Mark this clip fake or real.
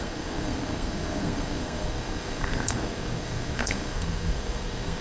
fake